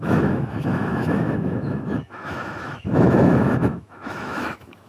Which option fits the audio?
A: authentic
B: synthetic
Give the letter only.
B